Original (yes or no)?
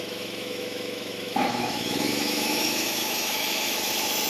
no